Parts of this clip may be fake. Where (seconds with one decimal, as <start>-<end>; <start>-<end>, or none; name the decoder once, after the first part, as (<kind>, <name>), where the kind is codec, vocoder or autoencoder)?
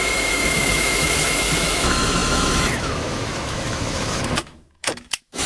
0.0-5.5 (autoencoder, DAC-VAE)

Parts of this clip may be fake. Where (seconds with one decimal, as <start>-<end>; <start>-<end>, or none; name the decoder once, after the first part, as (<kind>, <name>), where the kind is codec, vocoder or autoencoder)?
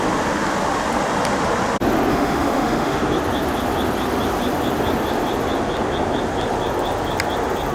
2.1-3.0 (autoencoder, DAC-VAE)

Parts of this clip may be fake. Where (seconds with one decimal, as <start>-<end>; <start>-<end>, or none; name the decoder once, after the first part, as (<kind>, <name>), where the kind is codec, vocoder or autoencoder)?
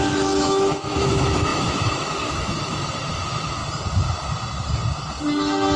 0.0-3.6 (autoencoder, DAC-VAE)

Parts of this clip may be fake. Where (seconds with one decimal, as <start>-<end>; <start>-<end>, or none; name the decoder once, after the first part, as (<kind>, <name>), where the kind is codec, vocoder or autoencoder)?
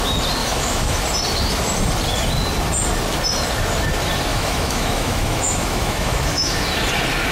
0.4-1.0 (autoencoder, DAC-VAE); 4.3-6.6